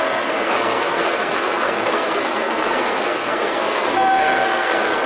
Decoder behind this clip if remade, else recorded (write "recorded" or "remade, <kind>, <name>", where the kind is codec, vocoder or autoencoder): remade, codec, SNAC